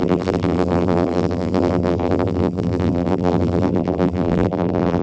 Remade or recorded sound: remade